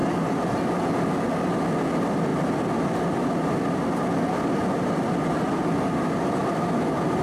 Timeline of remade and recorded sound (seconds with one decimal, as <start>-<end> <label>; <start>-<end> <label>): 0.0-7.2 recorded